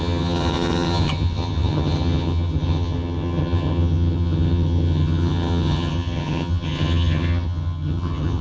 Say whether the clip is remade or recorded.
remade